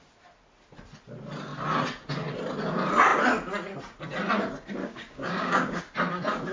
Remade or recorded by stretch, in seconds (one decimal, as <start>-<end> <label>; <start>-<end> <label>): 0.0-4.8 recorded; 4.8-5.8 remade; 5.8-6.5 recorded